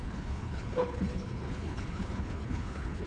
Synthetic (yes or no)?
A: yes